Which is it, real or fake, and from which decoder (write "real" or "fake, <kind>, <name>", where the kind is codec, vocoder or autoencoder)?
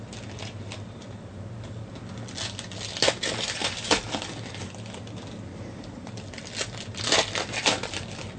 real